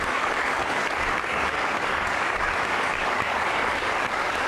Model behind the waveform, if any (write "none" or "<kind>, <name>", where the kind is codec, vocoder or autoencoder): codec, DAC